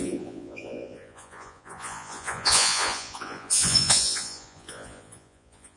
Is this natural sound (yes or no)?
no